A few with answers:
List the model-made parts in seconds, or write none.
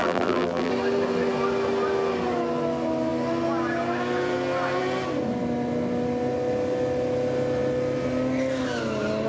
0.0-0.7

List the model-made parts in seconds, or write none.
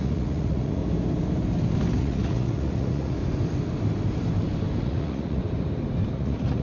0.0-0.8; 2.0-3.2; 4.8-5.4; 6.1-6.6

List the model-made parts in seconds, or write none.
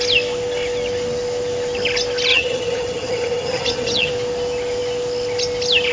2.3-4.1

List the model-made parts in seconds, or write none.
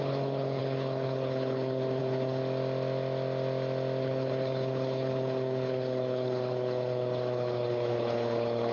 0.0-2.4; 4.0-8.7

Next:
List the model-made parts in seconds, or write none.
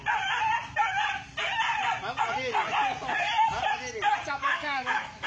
4.4-5.3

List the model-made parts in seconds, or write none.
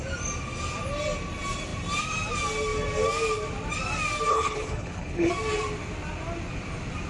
4.3-5.3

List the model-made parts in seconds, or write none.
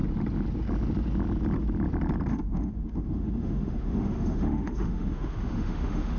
2.3-6.2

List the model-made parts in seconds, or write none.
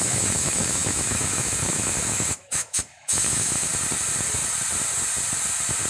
0.0-3.7